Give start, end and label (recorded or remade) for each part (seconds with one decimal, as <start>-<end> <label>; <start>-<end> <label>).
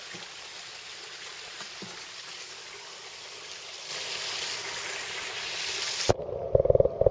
0.0-7.1 recorded